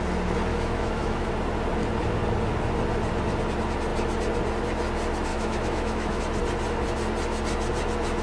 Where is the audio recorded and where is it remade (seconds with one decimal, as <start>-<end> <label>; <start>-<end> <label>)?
0.0-0.5 recorded; 0.5-1.3 remade; 1.3-5.3 recorded; 5.3-6.2 remade; 6.2-8.2 recorded